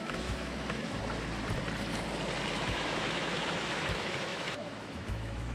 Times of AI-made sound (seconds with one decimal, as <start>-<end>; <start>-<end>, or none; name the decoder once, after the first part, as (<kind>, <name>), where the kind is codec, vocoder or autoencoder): 0.0-1.0 (autoencoder, DAC-VAE); 2.5-5.5